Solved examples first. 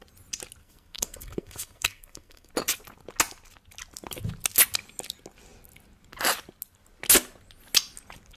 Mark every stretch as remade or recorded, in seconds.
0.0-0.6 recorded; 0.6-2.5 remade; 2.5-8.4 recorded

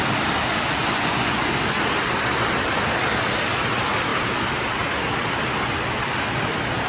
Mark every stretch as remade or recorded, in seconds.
0.0-0.8 recorded; 0.8-1.4 remade; 1.4-6.9 recorded

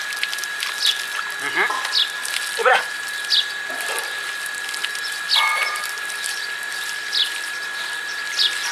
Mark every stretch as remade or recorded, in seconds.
0.0-2.6 recorded; 2.6-4.8 remade; 4.8-5.5 recorded; 5.5-8.2 remade; 8.2-8.7 recorded

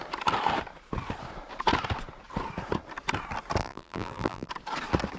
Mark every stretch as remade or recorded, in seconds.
0.0-3.6 recorded; 3.6-4.5 remade; 4.5-5.2 recorded